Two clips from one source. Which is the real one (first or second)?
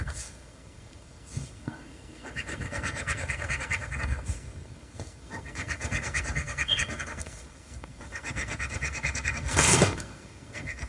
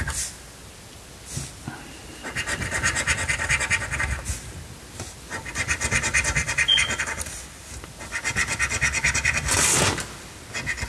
second